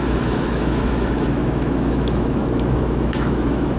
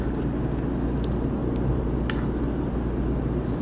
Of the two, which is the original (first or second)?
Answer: second